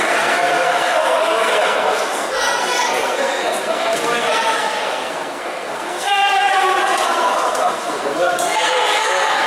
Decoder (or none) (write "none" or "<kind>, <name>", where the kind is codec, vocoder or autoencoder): codec, SNAC